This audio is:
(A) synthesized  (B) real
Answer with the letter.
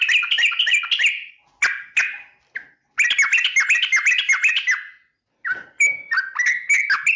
B